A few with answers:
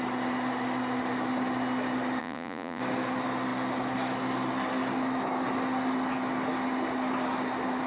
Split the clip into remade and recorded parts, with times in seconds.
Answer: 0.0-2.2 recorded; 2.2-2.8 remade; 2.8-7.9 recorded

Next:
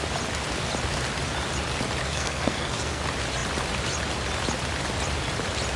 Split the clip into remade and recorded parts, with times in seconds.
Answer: 0.0-2.0 recorded; 2.0-3.0 remade; 3.0-5.8 recorded